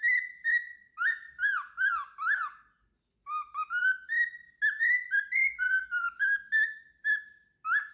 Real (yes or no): yes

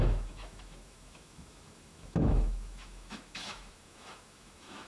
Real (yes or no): no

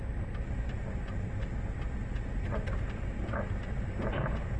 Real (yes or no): yes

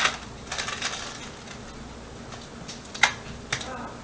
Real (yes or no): yes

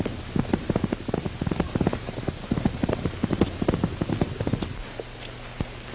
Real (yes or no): yes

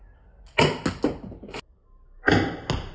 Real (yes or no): yes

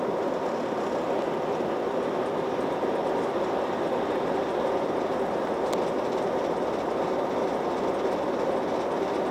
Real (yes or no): yes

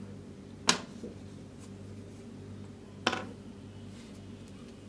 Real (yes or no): yes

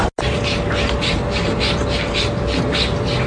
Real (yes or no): yes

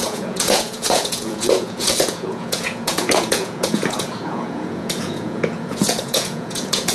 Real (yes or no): no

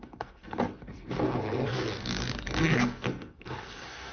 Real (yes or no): no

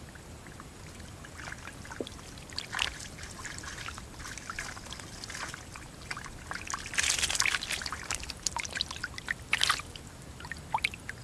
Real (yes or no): yes